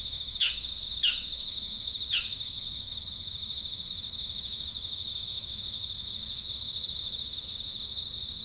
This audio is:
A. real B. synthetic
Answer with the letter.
B